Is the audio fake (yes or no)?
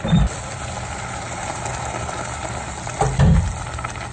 no